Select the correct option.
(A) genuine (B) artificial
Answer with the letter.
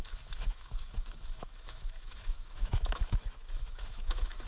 B